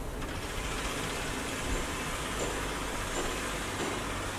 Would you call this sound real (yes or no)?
yes